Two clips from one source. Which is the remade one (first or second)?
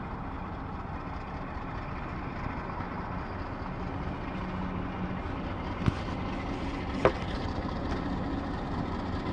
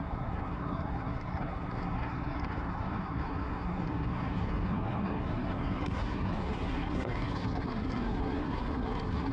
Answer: second